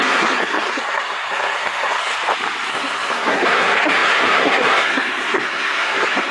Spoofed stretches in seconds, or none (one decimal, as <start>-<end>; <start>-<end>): 0.0-2.1; 2.7-6.3